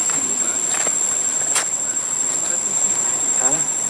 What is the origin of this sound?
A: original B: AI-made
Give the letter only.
A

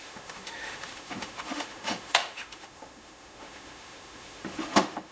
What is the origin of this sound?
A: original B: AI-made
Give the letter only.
B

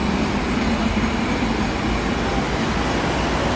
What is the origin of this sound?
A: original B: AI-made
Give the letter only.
A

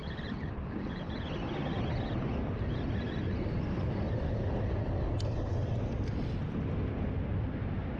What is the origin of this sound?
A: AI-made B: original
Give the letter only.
B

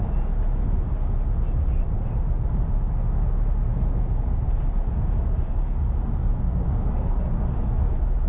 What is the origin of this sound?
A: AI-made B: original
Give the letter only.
B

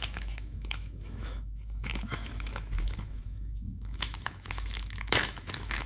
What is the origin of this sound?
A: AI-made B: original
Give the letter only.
A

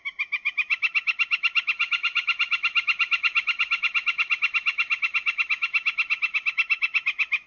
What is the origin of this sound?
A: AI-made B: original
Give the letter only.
A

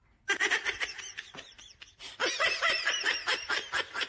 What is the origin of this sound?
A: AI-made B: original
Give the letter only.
B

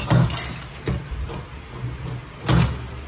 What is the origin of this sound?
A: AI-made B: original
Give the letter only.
B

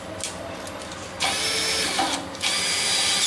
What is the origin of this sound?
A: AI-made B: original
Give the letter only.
B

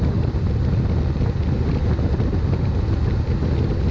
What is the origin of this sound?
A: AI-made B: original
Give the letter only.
B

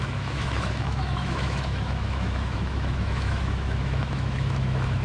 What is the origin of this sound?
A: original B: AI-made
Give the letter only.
B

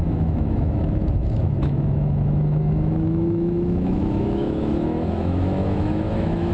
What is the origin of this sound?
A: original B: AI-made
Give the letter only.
B